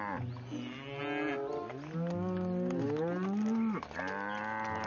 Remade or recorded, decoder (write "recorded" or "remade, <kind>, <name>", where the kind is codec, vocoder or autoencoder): recorded